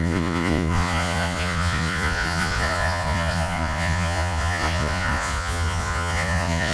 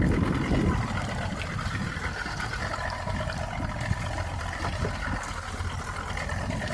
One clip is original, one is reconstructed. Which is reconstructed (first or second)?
first